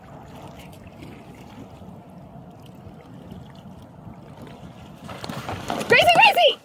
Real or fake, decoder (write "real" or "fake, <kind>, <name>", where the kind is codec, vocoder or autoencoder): real